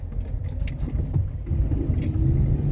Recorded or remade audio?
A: recorded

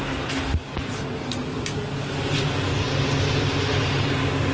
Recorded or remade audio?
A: recorded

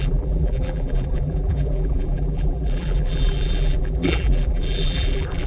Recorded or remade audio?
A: remade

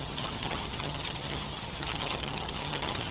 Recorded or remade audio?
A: remade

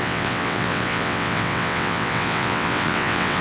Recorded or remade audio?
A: remade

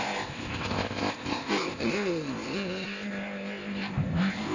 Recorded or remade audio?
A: remade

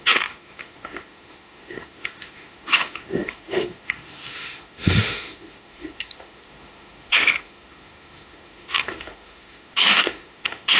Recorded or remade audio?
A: remade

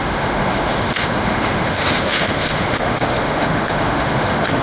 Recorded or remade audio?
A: remade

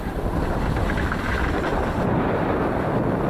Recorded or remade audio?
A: recorded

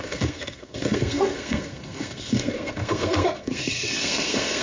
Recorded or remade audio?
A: remade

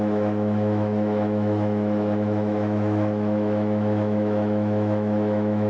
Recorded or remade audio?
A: remade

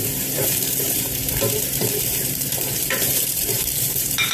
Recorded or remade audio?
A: remade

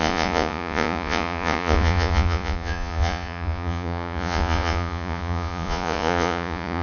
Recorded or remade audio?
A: remade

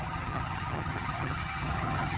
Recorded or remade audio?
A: remade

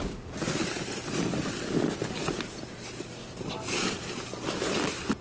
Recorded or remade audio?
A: recorded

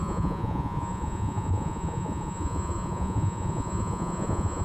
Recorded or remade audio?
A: remade